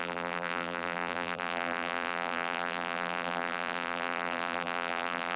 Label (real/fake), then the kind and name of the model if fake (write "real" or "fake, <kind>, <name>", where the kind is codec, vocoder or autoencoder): fake, vocoder, BigVGAN v2